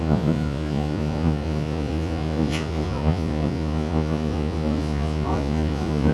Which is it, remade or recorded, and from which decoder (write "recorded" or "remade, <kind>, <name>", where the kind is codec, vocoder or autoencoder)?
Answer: remade, vocoder, Vocos